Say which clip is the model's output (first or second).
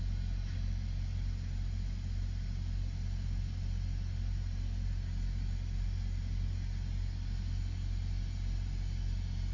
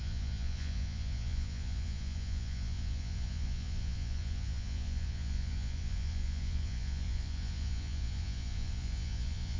second